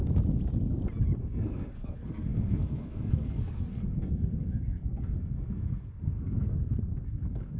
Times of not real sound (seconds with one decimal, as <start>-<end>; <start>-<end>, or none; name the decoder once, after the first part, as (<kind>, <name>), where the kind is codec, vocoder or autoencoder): 1.2-7.6 (codec, SNAC)